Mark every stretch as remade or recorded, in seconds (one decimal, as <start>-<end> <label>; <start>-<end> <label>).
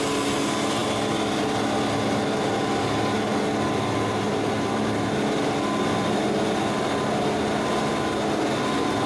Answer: 0.0-9.1 recorded